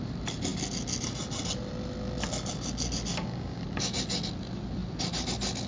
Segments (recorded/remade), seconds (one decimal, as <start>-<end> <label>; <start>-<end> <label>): 0.0-3.1 recorded; 3.1-3.6 remade; 3.6-5.7 recorded